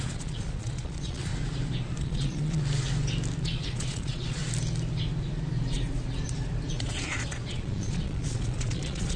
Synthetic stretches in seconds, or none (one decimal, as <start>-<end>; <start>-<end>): 0.0-1.3; 2.0-2.6; 3.4-4.4; 6.7-9.2